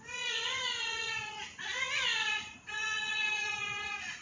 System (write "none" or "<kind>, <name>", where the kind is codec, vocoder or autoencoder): vocoder, Vocos